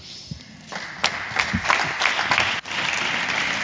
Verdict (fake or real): real